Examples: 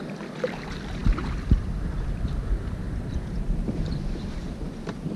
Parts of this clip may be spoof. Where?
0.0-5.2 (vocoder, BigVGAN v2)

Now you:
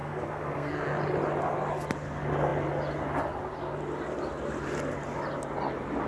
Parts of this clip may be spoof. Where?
0.0-0.7 (codec, SNAC)

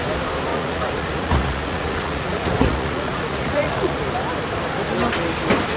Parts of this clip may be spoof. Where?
0.5-4.0 (vocoder, Vocos)

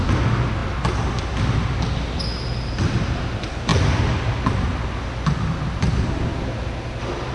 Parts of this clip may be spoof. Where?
0.6-1.4 (vocoder, BigVGAN v2)

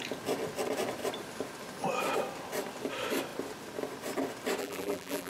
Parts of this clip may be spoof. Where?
4.6-5.3 (vocoder, BigVGAN v2)

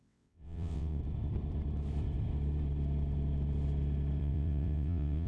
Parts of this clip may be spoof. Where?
0.0-1.0 (vocoder, WaveNeXt); 4.2-5.3